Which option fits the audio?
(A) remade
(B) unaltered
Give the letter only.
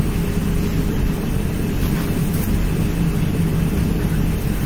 B